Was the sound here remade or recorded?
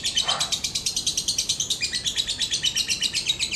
recorded